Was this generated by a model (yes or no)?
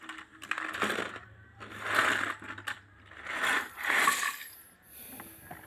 no